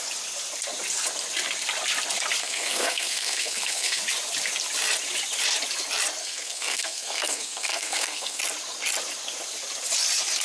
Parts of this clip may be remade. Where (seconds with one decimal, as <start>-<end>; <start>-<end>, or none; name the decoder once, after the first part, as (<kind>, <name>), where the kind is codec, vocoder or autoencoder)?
2.4-4.0 (codec, SNAC); 6.2-8.4